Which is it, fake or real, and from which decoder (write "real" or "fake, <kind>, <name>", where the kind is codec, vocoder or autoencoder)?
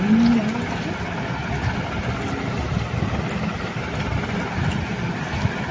real